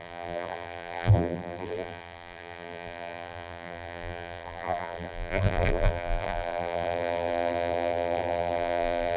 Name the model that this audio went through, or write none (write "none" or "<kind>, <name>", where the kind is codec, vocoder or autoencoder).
vocoder, BigVGAN v2